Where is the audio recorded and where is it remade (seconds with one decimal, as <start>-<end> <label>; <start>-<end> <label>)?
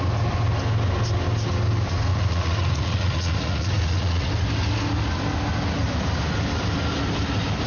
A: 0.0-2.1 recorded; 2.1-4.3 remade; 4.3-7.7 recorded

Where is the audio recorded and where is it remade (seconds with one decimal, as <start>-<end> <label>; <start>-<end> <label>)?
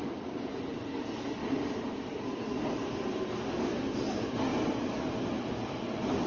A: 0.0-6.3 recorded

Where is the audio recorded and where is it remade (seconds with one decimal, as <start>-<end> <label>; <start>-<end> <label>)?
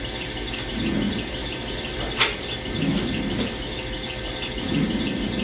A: 0.0-5.4 recorded